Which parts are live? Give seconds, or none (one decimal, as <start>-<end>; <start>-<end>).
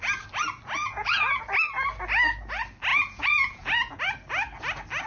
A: 0.0-0.8; 1.4-2.9; 4.0-5.1